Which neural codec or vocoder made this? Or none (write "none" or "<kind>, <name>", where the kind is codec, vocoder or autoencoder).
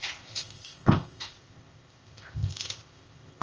codec, ZipCodec